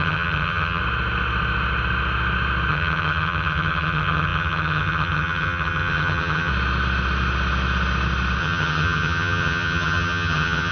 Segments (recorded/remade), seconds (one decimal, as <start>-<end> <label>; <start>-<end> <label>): 0.0-0.8 remade; 0.8-2.7 recorded; 2.7-6.5 remade; 6.5-8.4 recorded; 8.4-10.7 remade

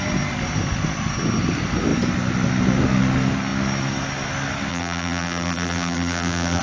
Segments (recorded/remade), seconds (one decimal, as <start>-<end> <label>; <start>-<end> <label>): 0.0-4.7 recorded; 4.7-6.6 remade

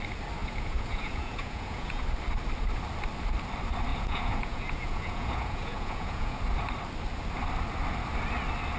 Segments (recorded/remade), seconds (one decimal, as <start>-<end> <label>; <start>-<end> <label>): 0.0-0.4 recorded; 0.4-2.0 remade; 2.0-3.9 recorded; 3.9-6.4 remade; 6.4-8.8 recorded

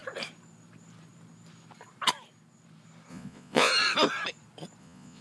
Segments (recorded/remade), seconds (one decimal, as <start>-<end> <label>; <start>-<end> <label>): 0.0-3.1 recorded; 3.1-3.7 remade; 3.7-4.8 recorded; 4.8-5.2 remade